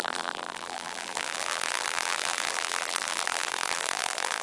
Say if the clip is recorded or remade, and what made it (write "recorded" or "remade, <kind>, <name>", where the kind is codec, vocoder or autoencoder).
remade, vocoder, BigVGAN v2